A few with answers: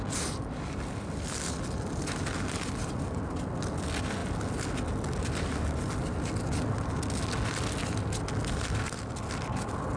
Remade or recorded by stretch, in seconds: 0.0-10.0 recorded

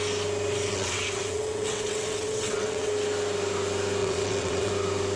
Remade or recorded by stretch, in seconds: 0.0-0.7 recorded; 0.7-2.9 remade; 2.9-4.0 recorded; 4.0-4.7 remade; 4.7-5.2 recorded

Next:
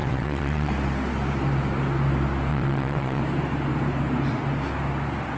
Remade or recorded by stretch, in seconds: 0.0-0.7 remade; 0.7-2.5 recorded; 2.5-3.2 remade; 3.2-5.4 recorded